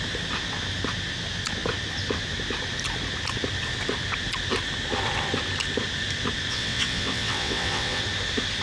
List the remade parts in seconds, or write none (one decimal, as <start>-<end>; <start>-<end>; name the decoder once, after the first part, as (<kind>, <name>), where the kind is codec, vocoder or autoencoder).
6.5-8.0 (vocoder, WaveNeXt)